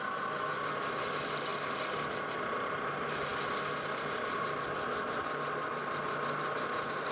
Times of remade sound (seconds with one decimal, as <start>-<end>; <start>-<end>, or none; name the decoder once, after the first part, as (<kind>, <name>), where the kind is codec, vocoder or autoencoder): none